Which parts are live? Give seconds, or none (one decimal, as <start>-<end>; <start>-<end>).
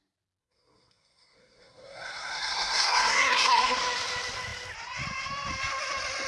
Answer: 0.0-0.4; 3.8-6.3